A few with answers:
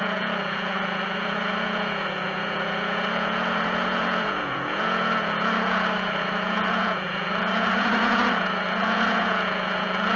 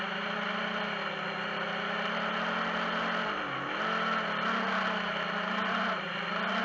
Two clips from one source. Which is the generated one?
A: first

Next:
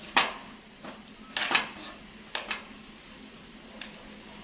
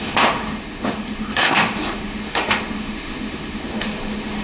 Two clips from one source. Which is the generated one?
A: second